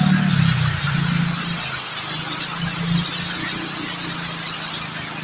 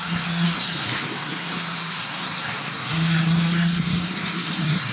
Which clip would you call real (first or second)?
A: first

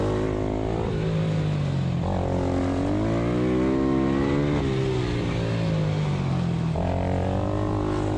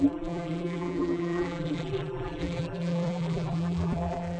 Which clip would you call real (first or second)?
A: first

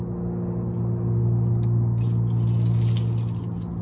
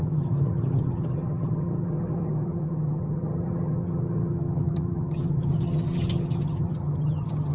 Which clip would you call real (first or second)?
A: first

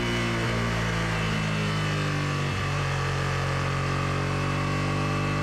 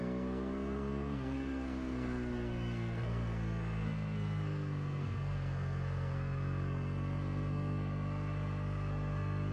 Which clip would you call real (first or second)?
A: first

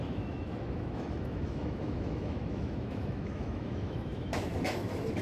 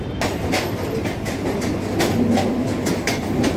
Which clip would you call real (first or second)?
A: second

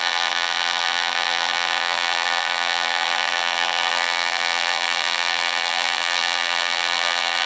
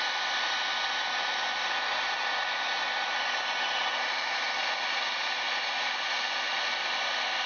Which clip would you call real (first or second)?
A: second